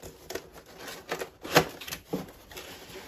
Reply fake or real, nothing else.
real